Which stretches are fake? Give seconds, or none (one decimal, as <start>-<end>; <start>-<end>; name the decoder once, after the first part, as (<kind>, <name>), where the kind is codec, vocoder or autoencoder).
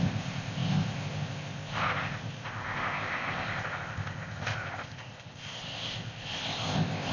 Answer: 0.0-7.1 (codec, ZipCodec)